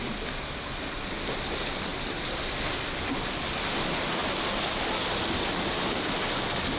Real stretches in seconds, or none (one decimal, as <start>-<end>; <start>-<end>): 0.0-1.9; 2.4-6.8